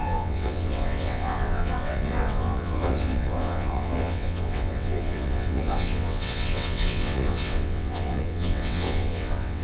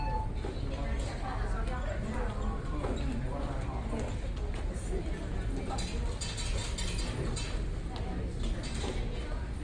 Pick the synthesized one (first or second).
first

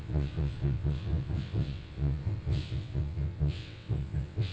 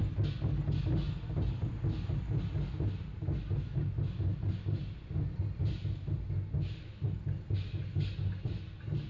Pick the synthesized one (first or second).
first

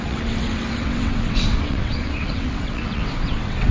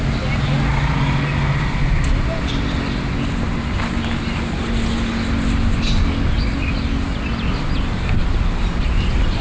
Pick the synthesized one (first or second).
first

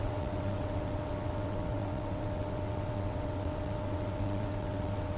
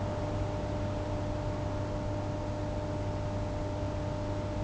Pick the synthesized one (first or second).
first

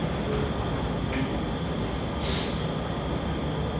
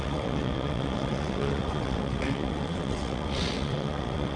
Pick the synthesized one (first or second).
second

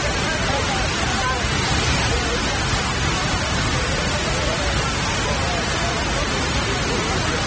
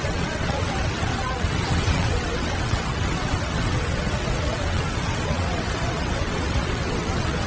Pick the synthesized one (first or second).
second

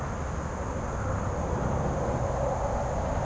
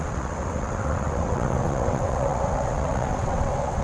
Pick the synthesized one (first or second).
second